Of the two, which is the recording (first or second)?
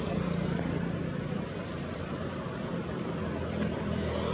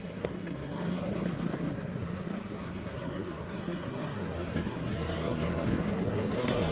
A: first